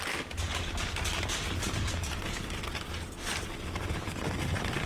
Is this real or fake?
real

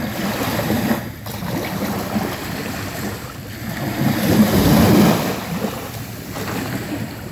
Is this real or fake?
real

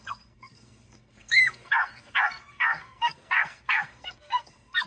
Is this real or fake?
fake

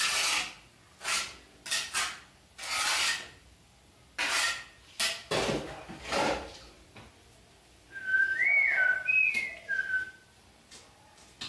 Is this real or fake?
real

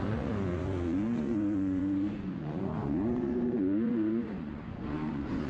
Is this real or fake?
fake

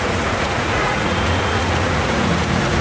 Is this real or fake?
fake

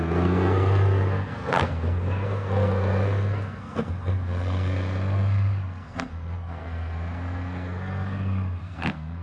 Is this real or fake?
fake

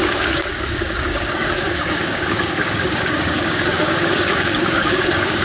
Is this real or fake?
fake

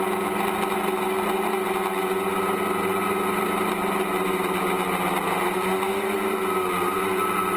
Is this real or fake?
real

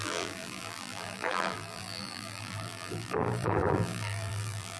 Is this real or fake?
fake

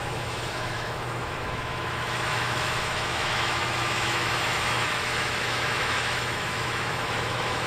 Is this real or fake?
fake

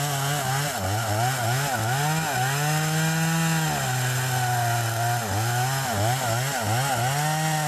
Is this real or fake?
real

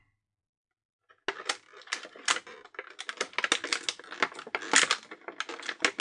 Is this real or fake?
real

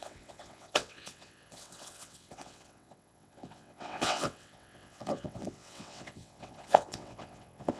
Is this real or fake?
fake